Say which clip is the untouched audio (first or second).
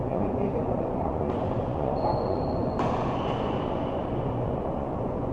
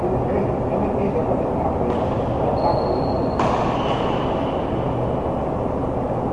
second